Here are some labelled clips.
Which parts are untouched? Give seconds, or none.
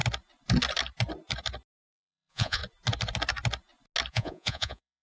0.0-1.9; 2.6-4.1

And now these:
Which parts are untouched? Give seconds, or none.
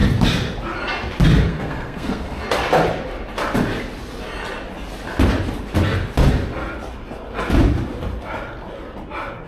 0.0-1.5; 2.4-9.5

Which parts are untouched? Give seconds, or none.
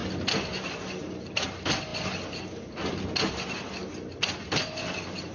0.0-5.3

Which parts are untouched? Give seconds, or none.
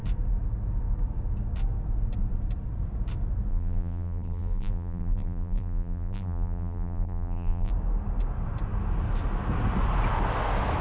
0.0-3.5; 7.7-10.8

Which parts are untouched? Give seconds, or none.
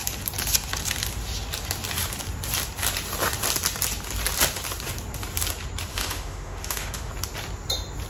0.0-5.9; 7.1-8.1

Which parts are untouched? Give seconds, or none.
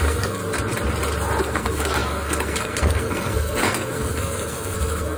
0.4-1.4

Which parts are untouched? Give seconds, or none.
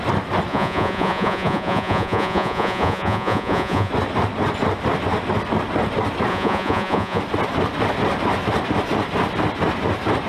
0.0-0.5; 3.9-6.3; 7.2-10.3